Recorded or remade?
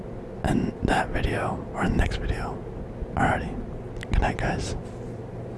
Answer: recorded